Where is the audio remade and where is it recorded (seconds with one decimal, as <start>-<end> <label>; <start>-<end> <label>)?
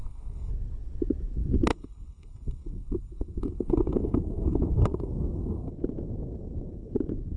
0.0-0.5 remade; 0.5-1.7 recorded; 1.7-5.7 remade; 5.7-7.4 recorded